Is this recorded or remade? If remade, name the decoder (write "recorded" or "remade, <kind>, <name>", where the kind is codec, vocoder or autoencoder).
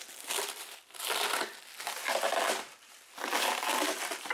recorded